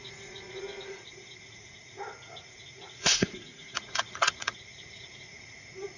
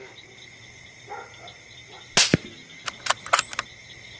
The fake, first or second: first